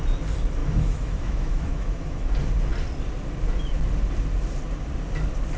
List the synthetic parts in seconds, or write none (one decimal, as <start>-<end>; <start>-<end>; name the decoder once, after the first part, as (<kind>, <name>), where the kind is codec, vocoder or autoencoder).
0.6-2.3 (autoencoder, DAC-VAE)